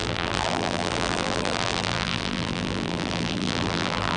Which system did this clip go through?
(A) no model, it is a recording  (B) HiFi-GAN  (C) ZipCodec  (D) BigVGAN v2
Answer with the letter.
D